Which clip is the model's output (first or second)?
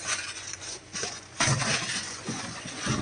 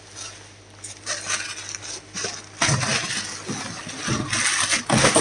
first